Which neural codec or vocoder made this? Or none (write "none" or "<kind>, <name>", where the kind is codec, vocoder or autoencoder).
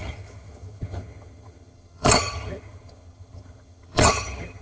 vocoder, HiFi-GAN